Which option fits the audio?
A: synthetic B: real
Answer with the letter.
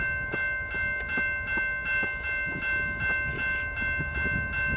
B